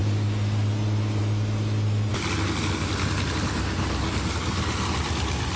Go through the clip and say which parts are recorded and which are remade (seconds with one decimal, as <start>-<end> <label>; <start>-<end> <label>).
0.0-5.6 recorded